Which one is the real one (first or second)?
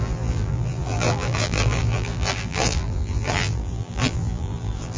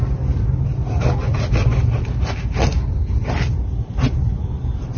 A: second